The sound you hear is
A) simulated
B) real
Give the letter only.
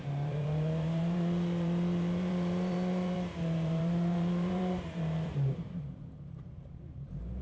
A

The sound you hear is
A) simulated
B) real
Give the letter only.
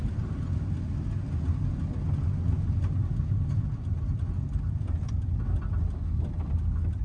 B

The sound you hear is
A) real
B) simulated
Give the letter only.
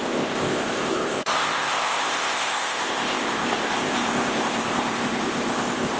B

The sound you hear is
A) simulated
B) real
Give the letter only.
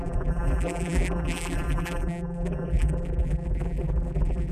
A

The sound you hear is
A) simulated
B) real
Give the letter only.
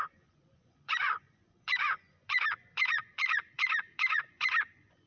A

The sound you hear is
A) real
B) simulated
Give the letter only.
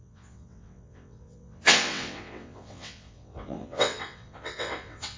B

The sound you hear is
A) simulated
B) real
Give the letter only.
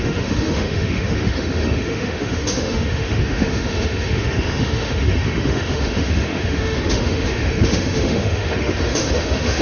A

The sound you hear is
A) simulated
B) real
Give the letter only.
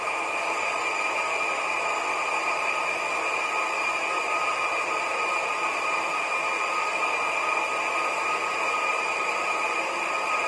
B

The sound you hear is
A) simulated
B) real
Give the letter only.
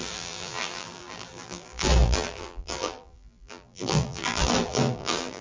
A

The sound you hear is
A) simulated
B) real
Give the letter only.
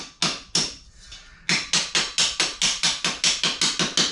B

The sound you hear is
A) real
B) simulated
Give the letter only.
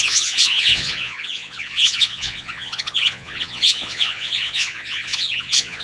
B